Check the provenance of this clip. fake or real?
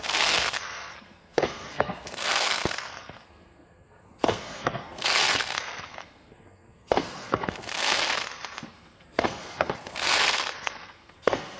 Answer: fake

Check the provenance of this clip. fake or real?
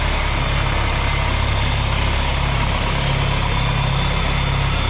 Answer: real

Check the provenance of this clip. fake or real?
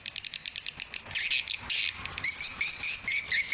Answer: real